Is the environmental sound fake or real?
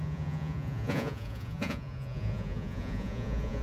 fake